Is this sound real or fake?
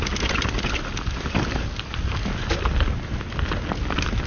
real